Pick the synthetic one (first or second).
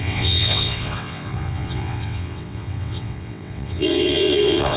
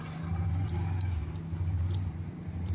first